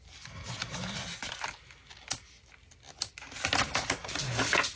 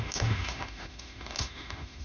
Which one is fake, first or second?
second